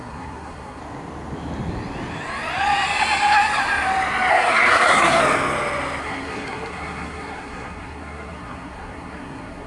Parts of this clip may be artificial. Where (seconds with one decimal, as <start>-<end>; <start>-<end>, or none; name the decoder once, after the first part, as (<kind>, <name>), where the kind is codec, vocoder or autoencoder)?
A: 0.0-0.8 (codec, SNAC); 4.3-5.2; 6.0-9.7